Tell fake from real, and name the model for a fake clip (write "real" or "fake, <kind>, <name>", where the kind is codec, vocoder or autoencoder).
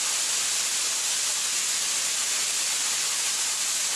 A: real